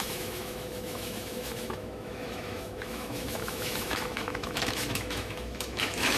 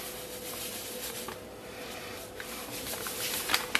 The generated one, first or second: first